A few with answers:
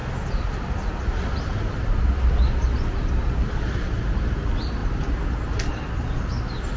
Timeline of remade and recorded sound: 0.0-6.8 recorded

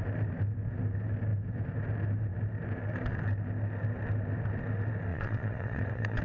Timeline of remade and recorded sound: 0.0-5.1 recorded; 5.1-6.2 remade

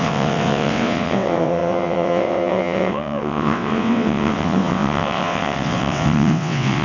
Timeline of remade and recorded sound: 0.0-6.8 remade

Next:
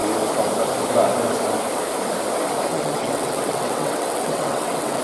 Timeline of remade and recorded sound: 0.0-2.7 recorded; 2.7-5.0 remade